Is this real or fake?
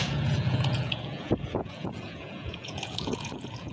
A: fake